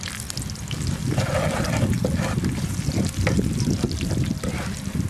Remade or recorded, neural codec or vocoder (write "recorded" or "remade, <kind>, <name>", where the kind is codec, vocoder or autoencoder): recorded